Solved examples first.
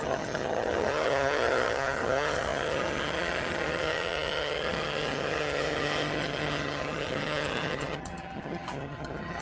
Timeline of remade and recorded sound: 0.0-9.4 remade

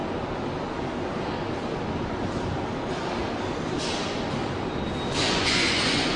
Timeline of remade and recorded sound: 0.0-5.2 recorded; 5.2-6.2 remade

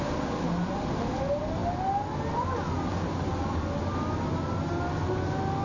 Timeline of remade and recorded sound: 0.0-5.6 recorded

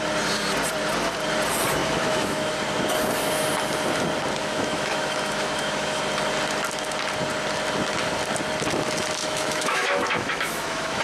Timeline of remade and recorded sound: 0.0-1.8 recorded; 1.8-2.5 remade; 2.5-4.4 recorded; 4.4-6.0 remade; 6.0-9.2 recorded; 9.2-11.0 remade

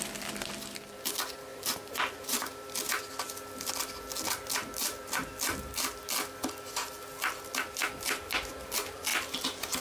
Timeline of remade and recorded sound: 0.0-1.5 recorded; 1.5-3.0 remade; 3.0-9.8 recorded

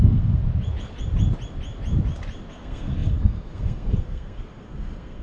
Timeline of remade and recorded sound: 0.0-0.4 remade; 0.4-2.5 recorded; 2.5-5.2 remade

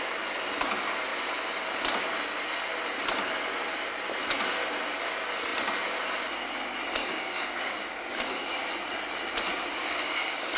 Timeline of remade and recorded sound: 0.0-7.0 recorded; 7.0-8.7 remade; 8.7-9.5 recorded; 9.5-10.6 remade

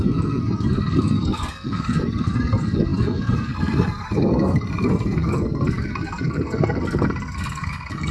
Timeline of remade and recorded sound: 0.0-8.1 remade